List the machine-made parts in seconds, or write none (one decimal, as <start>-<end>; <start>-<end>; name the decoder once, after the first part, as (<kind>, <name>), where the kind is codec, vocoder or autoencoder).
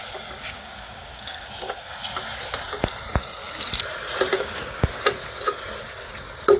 0.4-1.8 (codec, DAC); 4.3-5.0